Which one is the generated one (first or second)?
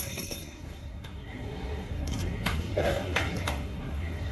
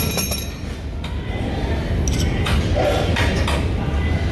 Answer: first